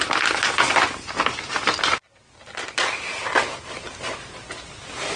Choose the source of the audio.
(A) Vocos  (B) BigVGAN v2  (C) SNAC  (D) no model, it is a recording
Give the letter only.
D